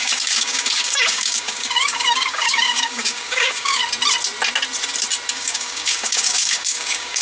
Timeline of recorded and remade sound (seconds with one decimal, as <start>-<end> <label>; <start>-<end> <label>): 0.0-3.8 remade; 3.8-5.3 recorded; 5.3-7.2 remade